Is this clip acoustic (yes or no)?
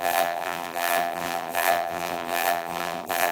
no